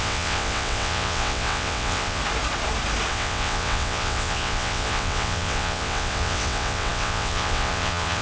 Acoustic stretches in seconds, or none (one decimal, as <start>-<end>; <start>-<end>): 2.2-3.1